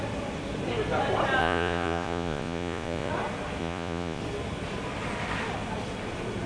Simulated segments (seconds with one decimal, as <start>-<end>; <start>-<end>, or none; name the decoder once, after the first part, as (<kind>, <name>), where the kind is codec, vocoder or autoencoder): 1.4-3.1 (vocoder, Vocos); 3.6-4.2